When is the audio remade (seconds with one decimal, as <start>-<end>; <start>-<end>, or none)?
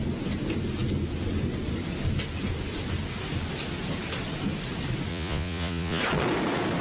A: 5.1-6.0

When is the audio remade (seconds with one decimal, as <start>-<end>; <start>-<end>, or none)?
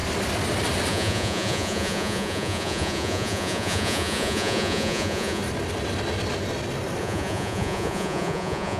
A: 0.9-5.4; 7.0-8.8